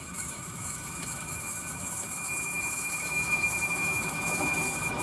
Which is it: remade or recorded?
remade